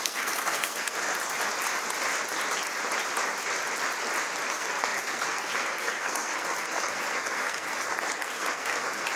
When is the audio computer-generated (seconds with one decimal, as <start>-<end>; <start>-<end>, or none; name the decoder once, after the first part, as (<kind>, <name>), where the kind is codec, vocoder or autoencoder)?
0.0-1.1 (codec, SNAC); 4.5-9.2